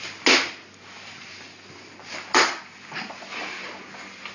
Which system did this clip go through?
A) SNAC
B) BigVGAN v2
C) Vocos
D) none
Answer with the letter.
D